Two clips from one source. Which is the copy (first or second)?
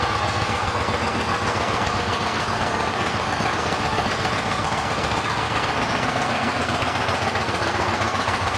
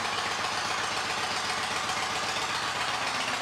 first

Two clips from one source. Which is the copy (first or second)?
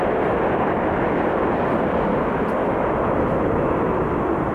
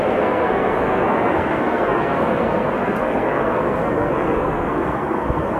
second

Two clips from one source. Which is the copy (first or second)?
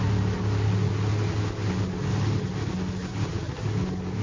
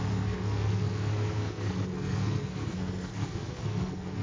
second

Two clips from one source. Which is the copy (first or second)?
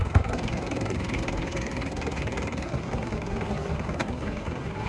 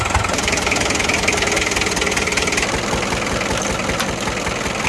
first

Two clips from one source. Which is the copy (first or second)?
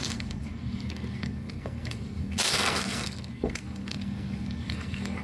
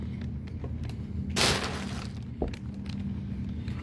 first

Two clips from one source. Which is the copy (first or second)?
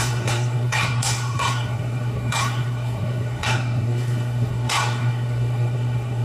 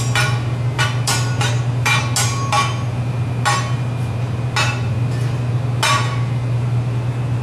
first